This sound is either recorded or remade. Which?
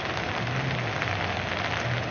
recorded